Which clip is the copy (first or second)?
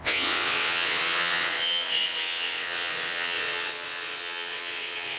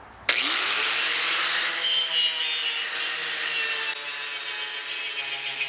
first